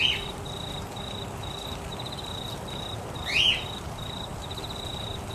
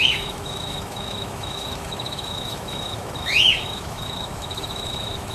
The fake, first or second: second